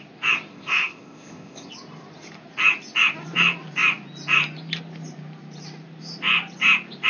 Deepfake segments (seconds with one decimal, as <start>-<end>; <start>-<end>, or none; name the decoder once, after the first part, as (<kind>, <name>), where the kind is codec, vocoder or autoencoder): 0.5-1.7 (codec, ZipCodec)